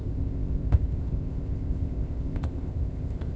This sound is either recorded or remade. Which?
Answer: remade